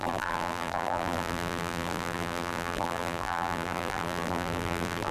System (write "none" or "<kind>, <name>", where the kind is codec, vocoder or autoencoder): vocoder, BigVGAN v2